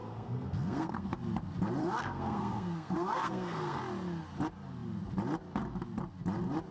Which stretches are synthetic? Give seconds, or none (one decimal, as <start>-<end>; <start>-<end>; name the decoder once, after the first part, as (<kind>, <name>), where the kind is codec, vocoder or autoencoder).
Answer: 0.0-1.1 (codec, SNAC); 1.8-3.8